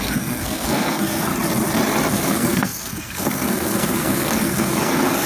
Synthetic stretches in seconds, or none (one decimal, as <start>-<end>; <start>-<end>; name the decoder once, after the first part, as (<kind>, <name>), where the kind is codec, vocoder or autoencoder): 0.0-1.3 (codec, SNAC); 2.1-5.3